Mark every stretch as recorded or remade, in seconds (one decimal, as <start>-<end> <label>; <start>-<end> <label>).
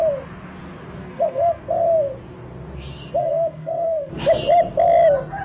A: 0.0-1.0 recorded; 1.0-1.6 remade; 1.6-3.2 recorded; 3.2-4.1 remade; 4.1-5.4 recorded